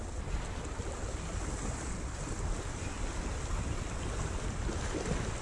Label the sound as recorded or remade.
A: recorded